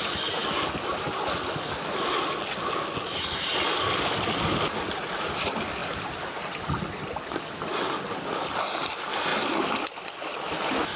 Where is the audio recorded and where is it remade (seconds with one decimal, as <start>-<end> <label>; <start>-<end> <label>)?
0.0-11.0 recorded